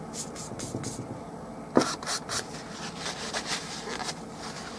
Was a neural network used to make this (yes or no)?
no